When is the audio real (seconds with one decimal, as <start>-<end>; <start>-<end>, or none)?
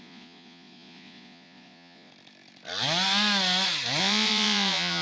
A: 2.1-4.0